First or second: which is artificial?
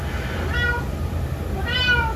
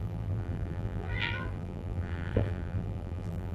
second